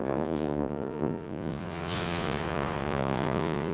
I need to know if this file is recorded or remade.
remade